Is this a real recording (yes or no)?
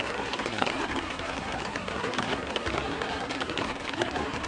no